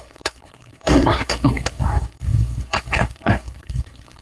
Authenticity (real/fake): fake